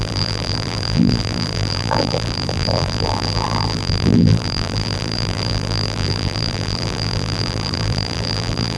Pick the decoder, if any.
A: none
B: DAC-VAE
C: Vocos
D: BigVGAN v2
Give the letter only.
D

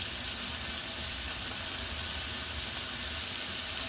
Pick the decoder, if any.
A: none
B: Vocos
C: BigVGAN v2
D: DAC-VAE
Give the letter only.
A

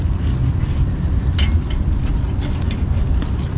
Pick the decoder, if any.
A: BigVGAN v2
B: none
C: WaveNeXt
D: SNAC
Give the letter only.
B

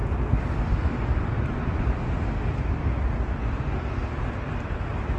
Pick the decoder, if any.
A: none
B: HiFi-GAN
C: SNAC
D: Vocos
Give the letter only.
A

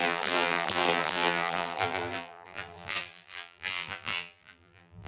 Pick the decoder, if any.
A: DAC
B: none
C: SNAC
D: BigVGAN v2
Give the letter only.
D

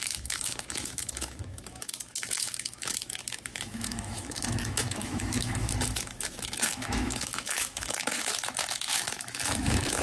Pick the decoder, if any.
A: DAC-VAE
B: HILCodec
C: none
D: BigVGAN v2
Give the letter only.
A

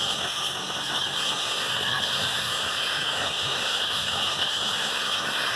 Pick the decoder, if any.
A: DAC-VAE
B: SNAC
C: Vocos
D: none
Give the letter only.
B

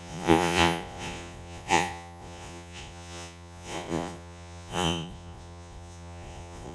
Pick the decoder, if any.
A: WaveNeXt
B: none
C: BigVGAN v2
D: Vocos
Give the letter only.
D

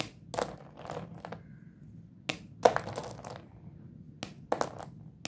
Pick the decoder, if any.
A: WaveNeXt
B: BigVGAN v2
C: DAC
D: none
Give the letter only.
D